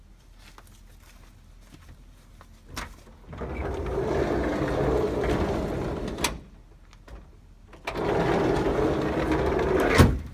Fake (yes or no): no